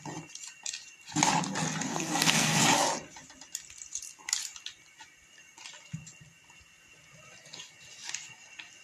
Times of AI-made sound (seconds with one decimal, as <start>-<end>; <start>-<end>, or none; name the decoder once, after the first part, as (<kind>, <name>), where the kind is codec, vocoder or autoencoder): 1.9-2.6 (codec, SNAC)